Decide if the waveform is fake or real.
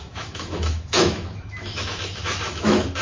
fake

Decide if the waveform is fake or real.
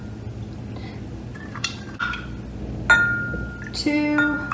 real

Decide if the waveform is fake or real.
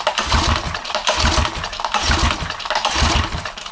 real